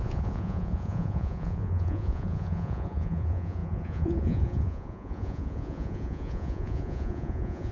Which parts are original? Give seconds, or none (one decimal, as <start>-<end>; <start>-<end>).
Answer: none